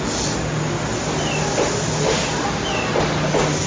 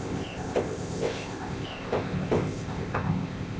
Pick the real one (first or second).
first